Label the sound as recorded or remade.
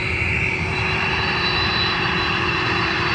remade